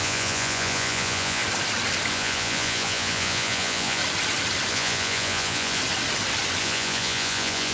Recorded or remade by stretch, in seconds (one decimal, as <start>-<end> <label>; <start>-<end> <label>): 0.0-1.4 remade; 1.4-2.1 recorded; 2.1-4.0 remade; 4.0-4.7 recorded; 4.7-5.8 remade; 5.8-6.6 recorded; 6.6-7.7 remade